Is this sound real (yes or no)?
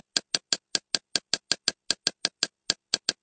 yes